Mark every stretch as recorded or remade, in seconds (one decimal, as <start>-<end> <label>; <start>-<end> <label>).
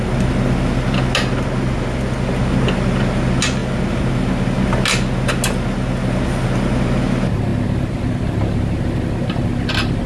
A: 0.0-10.1 recorded